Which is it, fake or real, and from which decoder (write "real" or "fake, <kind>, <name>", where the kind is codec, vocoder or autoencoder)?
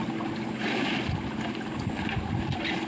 real